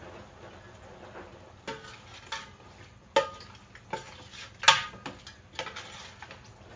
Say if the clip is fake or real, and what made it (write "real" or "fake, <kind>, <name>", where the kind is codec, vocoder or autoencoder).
real